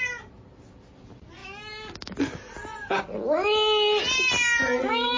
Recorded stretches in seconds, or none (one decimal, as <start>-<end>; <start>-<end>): 0.0-5.2